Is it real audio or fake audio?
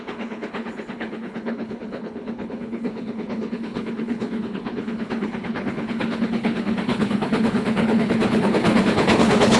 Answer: fake